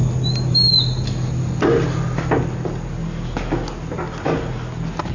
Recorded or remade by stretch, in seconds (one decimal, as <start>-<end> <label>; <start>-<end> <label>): 0.0-5.1 recorded